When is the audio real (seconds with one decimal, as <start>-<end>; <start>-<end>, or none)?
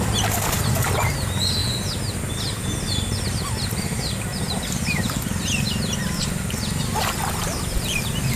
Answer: 0.0-8.4